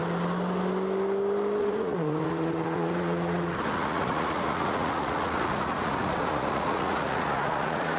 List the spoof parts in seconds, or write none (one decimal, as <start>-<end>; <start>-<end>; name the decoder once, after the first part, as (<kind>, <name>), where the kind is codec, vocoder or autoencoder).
1.6-8.0 (vocoder, Vocos)